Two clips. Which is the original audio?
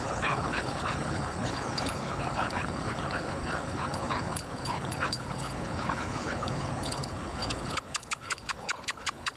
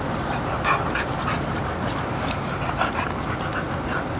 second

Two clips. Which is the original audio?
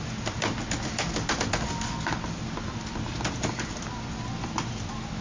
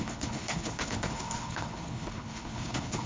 first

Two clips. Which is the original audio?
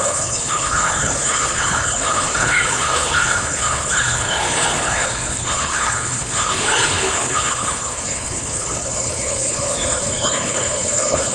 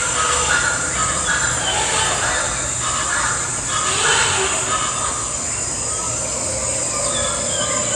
second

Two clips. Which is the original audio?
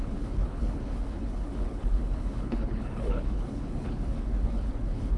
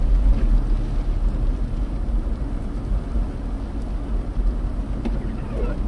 second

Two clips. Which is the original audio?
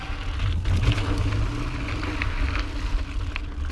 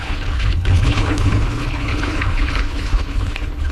first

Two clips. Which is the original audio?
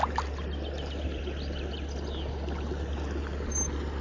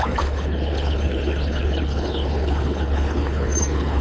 first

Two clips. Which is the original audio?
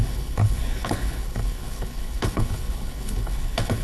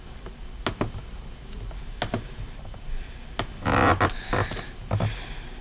second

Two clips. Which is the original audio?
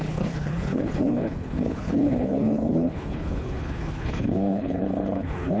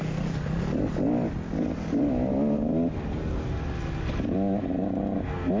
second